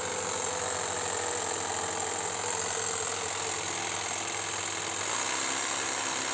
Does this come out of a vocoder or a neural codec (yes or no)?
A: no